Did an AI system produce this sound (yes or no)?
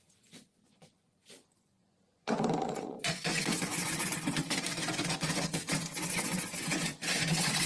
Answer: yes